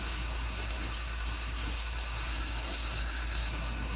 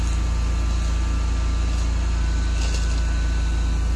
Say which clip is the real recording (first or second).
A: second